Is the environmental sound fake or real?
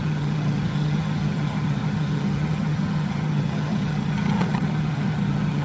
fake